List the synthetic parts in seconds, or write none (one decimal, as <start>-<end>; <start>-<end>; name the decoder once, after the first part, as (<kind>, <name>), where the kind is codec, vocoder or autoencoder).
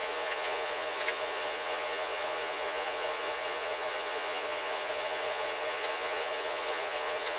0.0-7.4 (vocoder, Vocos)